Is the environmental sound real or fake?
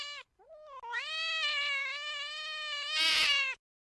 real